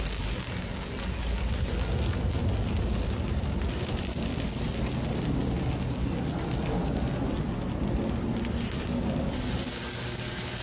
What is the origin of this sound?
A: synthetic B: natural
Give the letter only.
B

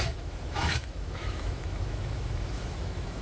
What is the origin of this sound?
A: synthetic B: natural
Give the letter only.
A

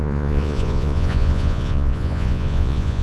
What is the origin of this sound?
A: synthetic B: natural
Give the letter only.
A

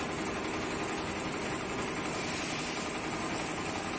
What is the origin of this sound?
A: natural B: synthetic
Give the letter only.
A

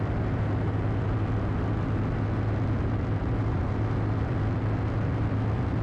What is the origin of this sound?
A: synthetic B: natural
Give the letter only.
B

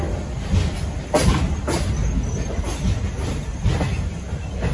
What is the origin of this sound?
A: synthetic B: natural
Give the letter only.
B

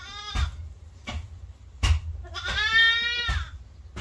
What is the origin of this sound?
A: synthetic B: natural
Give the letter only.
B